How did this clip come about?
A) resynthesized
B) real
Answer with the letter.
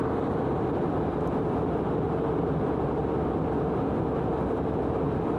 B